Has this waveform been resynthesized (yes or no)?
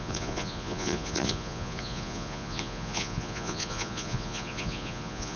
yes